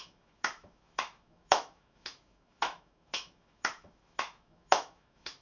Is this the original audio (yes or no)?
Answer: no